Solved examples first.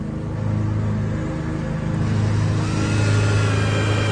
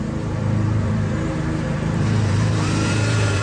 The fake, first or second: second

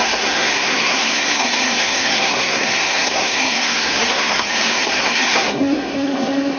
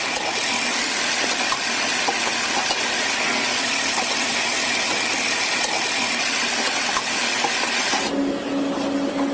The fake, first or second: first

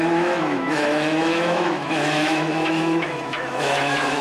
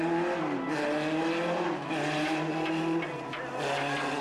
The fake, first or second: first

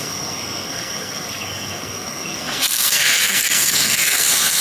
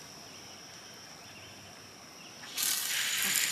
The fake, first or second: first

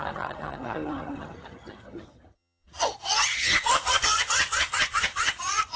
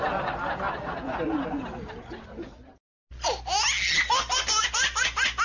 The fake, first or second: first